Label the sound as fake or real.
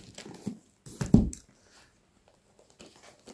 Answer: real